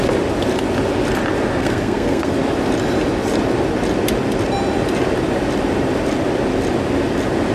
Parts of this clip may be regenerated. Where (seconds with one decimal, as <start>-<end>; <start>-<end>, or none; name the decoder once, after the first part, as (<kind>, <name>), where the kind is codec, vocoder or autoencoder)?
1.6-2.3 (codec, SNAC)